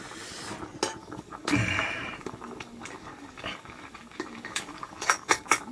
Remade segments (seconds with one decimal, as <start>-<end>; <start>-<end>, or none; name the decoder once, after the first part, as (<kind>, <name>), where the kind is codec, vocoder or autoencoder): 1.0-1.6 (codec, DAC); 2.2-5.7

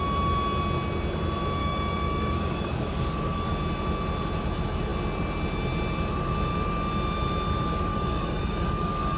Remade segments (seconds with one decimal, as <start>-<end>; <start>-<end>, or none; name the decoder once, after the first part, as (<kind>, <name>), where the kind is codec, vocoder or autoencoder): 1.6-3.5 (codec, DAC); 7.9-9.2

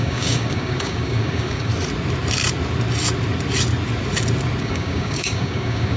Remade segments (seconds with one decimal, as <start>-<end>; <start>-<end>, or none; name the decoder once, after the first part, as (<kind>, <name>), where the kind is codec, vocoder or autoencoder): 0.0-1.7 (codec, DAC); 4.6-6.0

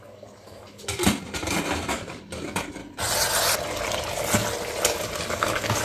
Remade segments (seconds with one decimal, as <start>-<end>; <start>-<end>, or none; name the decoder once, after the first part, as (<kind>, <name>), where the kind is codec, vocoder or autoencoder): 0.0-0.9 (codec, DAC); 1.9-2.8; 5.3-5.8